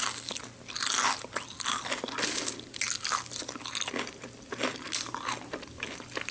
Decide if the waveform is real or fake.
real